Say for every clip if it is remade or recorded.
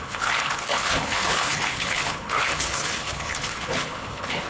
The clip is remade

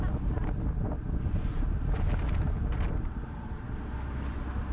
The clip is recorded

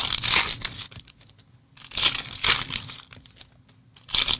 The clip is recorded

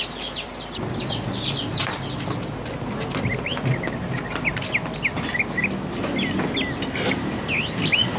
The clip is recorded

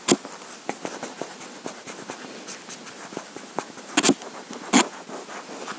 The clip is recorded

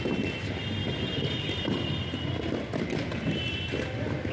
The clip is recorded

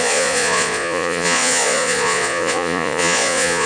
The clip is remade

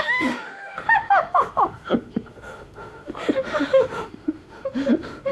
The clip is remade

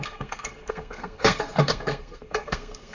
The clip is remade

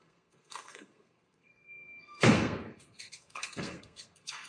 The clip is remade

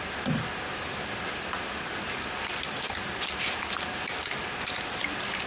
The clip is recorded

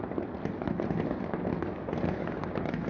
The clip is recorded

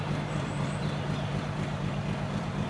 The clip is remade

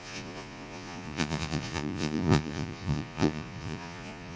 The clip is remade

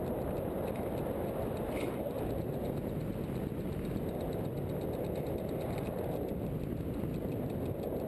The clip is recorded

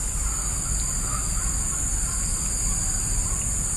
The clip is recorded